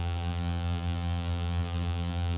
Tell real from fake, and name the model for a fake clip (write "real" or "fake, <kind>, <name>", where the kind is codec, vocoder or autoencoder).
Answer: fake, vocoder, BigVGAN v2